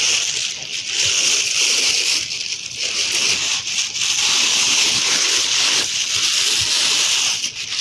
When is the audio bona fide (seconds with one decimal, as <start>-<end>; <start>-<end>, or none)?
0.0-4.5; 6.1-7.8

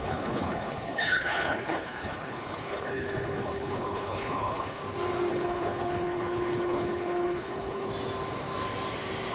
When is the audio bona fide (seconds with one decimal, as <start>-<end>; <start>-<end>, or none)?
4.8-5.3; 7.9-9.3

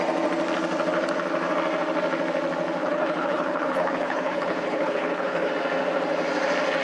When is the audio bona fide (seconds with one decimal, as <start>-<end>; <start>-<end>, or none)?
0.0-2.8; 5.5-6.8

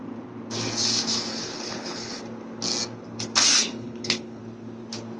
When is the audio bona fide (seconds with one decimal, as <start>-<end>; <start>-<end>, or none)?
0.0-1.3; 2.2-3.7; 4.4-5.2

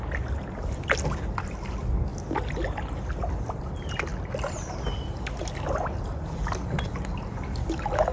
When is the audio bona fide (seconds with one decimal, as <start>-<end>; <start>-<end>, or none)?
0.0-8.1

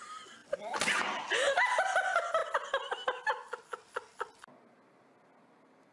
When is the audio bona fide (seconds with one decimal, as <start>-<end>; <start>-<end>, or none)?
0.0-5.9

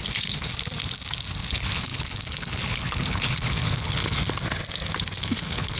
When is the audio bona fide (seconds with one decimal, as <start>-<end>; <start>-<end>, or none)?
0.5-1.5; 4.2-5.2

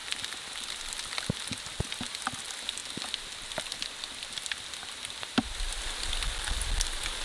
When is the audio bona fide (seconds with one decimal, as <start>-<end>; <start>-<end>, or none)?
0.0-7.2